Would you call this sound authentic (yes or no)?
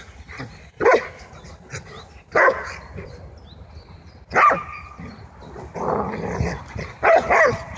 yes